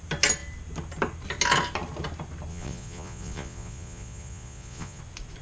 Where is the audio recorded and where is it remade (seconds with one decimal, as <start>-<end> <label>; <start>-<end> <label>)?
0.0-2.5 recorded; 2.5-5.0 remade; 5.0-5.4 recorded